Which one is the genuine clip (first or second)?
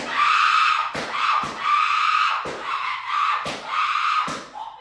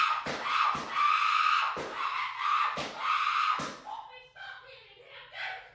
second